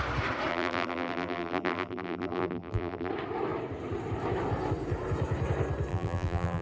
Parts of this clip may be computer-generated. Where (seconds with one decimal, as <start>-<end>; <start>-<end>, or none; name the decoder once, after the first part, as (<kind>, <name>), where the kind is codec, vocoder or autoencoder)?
0.5-3.1 (vocoder, BigVGAN v2); 5.9-6.6